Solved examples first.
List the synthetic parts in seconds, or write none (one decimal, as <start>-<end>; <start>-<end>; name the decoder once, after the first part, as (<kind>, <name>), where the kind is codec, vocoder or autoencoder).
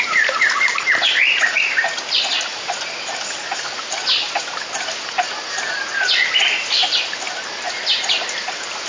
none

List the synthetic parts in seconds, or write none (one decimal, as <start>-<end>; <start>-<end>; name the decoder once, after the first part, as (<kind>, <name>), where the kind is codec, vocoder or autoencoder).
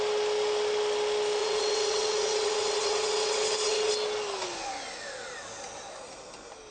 1.4-3.9 (vocoder, WaveNeXt)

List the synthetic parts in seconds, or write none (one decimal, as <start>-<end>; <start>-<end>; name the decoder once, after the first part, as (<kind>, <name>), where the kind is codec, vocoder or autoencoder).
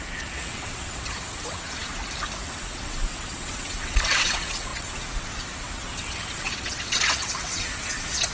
0.0-2.0 (vocoder, WaveNeXt); 2.6-8.3